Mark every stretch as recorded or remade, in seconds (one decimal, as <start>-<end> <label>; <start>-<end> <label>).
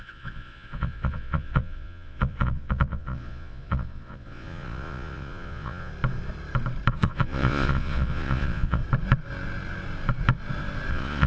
0.0-5.9 remade; 5.9-6.9 recorded; 6.9-8.8 remade; 8.8-10.9 recorded; 10.9-11.3 remade